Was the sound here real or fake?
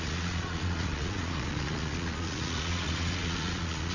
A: fake